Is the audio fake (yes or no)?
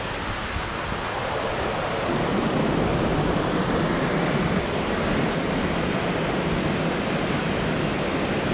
no